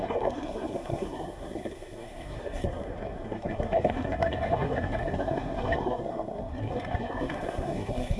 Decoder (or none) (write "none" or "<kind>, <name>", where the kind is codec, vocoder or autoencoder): codec, SNAC